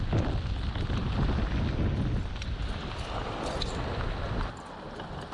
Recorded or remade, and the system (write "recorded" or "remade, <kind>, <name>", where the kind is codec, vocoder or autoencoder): recorded